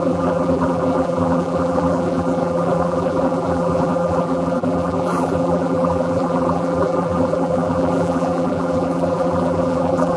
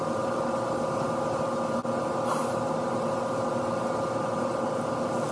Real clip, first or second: second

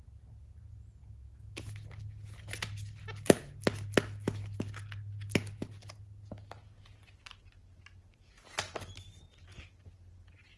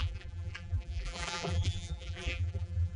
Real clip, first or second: first